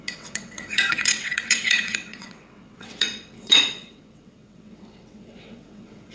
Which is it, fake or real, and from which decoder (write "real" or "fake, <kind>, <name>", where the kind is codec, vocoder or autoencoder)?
fake, vocoder, WaveNeXt